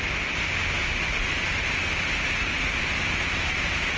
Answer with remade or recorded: recorded